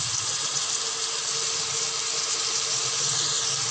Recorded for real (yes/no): yes